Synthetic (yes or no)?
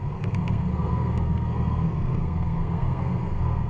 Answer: yes